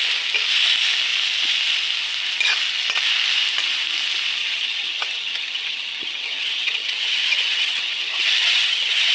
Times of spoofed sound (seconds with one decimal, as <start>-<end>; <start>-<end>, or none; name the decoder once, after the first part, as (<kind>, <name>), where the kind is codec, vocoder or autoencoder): 4.4-9.1 (vocoder, HiFi-GAN)